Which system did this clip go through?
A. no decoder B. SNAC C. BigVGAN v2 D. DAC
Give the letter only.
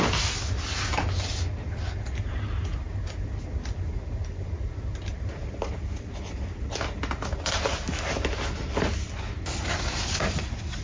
A